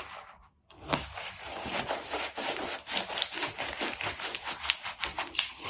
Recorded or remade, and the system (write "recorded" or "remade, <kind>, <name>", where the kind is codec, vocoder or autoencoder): remade, vocoder, BigVGAN v2